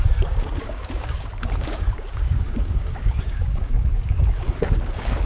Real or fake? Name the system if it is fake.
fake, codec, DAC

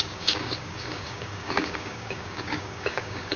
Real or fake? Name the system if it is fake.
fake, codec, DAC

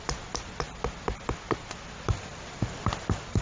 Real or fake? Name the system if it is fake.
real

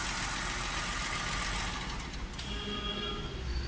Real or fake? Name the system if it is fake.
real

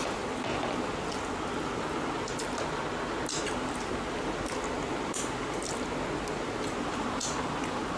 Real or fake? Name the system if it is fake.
real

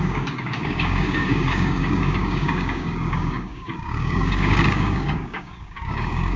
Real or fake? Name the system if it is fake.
fake, codec, DAC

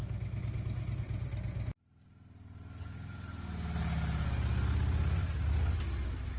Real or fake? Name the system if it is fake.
real